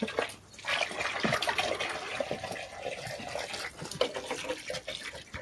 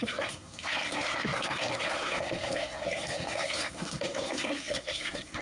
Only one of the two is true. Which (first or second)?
first